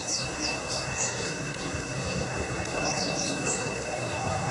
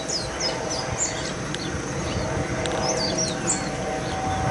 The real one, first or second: second